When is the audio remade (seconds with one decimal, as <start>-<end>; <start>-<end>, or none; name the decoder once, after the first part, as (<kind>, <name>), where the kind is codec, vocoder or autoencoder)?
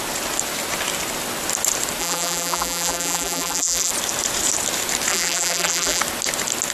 2.0-3.9 (vocoder, BigVGAN v2); 5.1-6.0